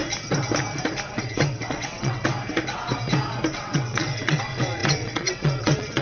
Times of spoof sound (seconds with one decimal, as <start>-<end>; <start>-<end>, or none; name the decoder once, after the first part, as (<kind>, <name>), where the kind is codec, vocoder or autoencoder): 1.1-2.3 (vocoder, WaveNeXt); 3.5-6.0